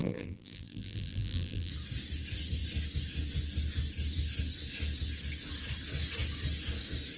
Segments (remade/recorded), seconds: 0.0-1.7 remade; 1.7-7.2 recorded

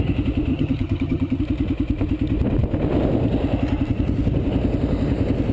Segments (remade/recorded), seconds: 0.0-0.5 recorded; 0.5-1.4 remade; 1.4-5.5 recorded

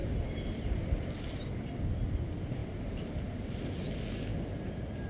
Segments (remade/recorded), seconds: 0.0-1.0 remade; 1.0-2.6 recorded; 2.6-3.6 remade; 3.6-5.1 recorded

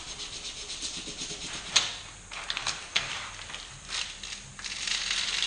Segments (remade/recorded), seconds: 0.0-2.6 recorded; 2.6-3.1 remade; 3.1-5.5 recorded

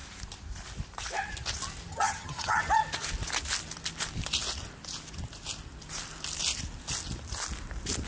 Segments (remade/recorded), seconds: 0.0-1.9 recorded; 1.9-2.6 remade; 2.6-8.1 recorded